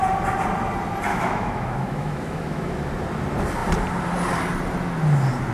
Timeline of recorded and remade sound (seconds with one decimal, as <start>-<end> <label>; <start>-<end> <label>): 0.0-1.1 recorded; 1.1-2.9 remade; 2.9-5.5 recorded